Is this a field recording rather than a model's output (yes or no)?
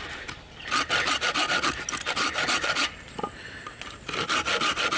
yes